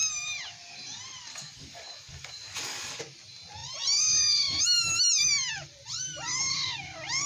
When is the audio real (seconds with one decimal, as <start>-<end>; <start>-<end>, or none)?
0.0-1.3; 3.0-7.3